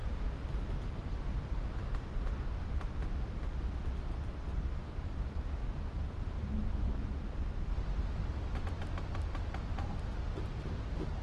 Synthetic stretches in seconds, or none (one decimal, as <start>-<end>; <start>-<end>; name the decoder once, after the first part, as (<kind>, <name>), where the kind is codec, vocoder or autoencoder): none